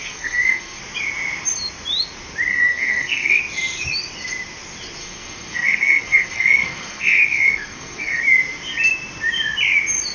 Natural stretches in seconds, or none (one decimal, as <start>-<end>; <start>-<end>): 0.8-2.5; 3.4-5.0; 8.2-10.1